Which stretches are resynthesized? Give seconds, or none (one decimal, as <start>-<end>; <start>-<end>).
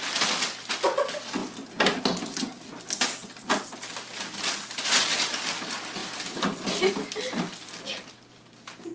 none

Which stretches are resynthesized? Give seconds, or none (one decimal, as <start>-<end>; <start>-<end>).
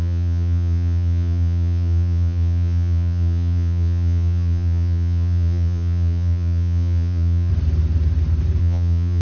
0.0-7.5; 8.6-9.2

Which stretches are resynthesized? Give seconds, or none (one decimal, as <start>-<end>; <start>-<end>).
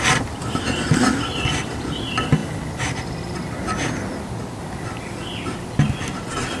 none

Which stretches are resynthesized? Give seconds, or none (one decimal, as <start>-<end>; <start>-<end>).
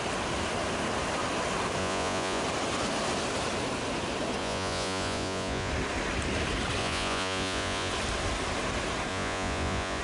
1.8-2.4; 4.4-5.7; 6.8-7.9; 9.1-10.0